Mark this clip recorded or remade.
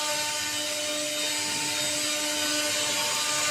recorded